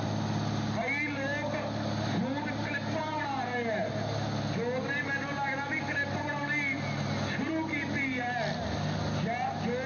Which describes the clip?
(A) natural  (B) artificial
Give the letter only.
A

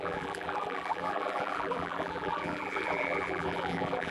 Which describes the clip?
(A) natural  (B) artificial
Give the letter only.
B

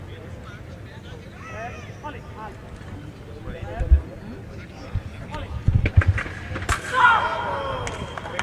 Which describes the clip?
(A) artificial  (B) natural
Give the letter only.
B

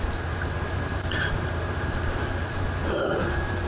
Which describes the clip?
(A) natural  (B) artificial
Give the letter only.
B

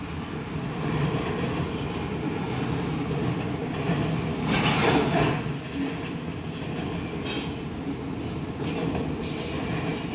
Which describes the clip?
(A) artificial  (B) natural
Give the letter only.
B